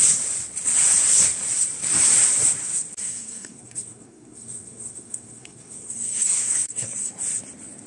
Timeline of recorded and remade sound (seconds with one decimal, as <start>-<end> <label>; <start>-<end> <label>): 0.0-3.0 recorded; 3.0-7.1 remade; 7.1-7.9 recorded